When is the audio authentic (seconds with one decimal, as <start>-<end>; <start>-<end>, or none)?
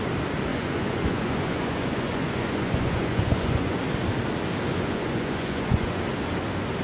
0.0-0.5; 3.8-4.7; 6.0-6.8